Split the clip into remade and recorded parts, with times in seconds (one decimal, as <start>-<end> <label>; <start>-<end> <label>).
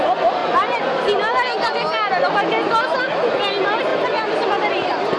0.0-5.2 recorded